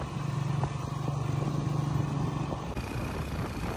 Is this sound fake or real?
real